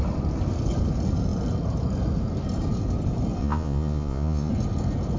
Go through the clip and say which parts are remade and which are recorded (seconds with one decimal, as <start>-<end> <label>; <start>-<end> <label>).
0.0-3.4 recorded; 3.4-4.5 remade; 4.5-5.2 recorded